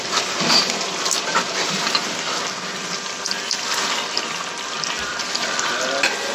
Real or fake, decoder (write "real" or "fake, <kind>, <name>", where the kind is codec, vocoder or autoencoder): real